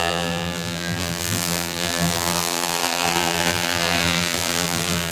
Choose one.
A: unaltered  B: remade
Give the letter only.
B